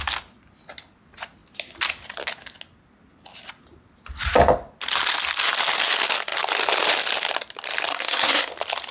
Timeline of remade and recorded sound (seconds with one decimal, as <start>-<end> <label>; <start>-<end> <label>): 0.0-7.9 recorded; 7.9-8.5 remade; 8.5-8.9 recorded